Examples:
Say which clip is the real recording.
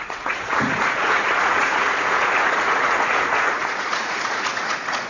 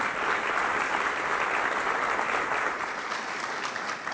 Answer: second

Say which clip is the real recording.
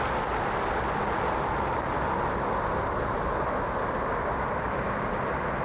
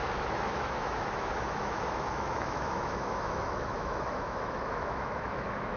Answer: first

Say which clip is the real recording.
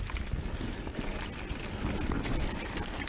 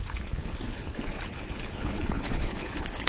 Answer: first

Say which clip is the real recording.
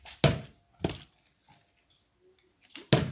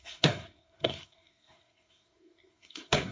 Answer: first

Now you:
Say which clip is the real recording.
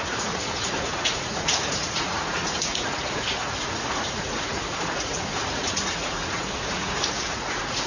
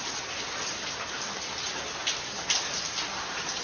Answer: second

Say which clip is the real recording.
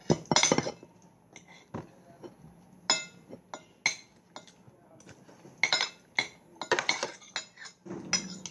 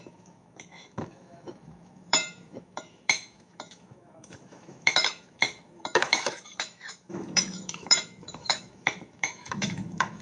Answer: first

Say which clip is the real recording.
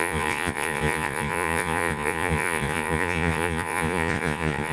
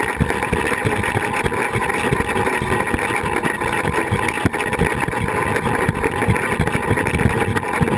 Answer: second